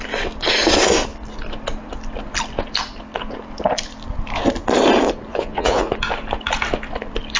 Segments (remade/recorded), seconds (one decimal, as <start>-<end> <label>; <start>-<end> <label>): 0.0-5.3 recorded; 5.3-5.9 remade; 5.9-7.4 recorded